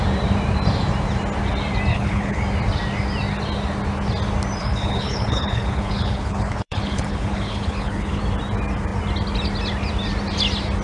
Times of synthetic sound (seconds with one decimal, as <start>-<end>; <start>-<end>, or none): 1.9-2.4; 4.6-8.2